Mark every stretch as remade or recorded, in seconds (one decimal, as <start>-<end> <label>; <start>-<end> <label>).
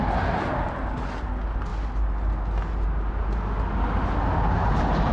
0.0-5.1 recorded